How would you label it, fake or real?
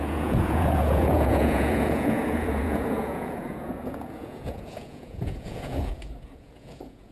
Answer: fake